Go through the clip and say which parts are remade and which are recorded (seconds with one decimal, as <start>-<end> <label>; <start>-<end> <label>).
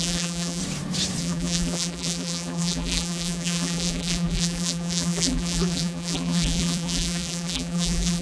0.0-0.6 remade; 0.6-1.2 recorded; 1.2-8.2 remade